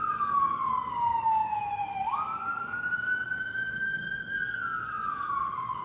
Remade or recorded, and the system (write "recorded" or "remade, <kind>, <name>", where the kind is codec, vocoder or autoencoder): remade, codec, DAC